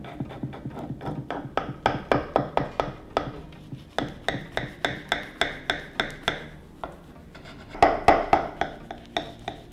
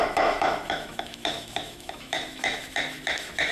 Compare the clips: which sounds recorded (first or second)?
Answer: first